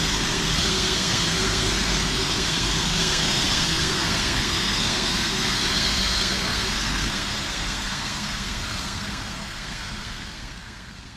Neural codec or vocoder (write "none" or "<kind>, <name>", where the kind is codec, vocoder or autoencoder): codec, SNAC